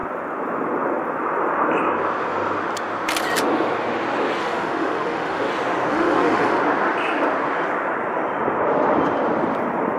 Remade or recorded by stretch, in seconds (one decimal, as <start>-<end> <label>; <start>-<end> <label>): 0.0-4.4 recorded; 4.4-5.5 remade; 5.5-5.9 recorded; 5.9-6.6 remade; 6.6-10.0 recorded